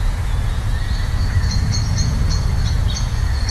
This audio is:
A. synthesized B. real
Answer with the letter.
A